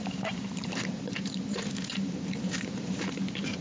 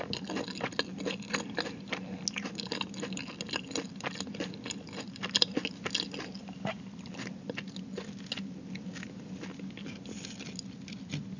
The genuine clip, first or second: second